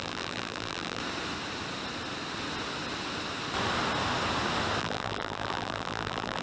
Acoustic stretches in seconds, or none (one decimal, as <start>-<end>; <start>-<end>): 1.0-4.8